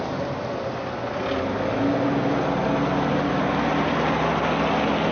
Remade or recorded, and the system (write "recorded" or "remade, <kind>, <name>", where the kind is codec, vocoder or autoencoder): recorded